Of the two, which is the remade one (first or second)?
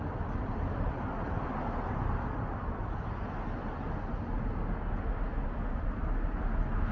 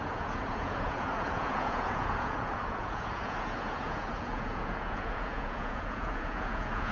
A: second